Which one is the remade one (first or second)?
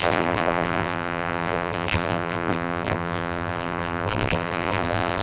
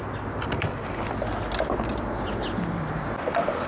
first